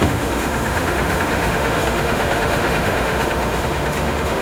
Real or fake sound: fake